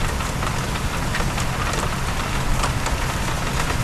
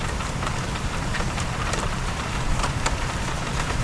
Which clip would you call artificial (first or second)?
second